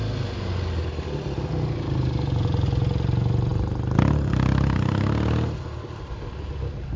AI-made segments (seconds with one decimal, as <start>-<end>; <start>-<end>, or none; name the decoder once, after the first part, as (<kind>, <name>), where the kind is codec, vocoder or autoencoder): none